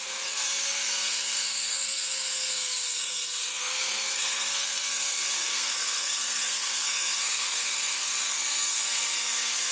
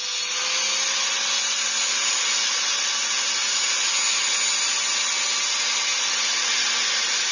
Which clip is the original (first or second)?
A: second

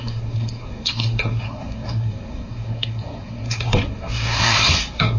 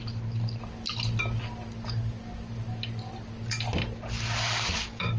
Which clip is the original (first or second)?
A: second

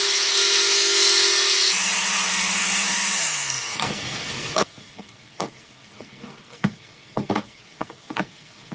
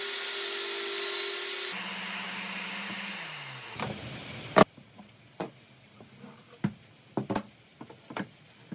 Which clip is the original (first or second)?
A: second